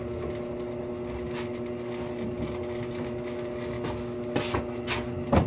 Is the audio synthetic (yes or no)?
no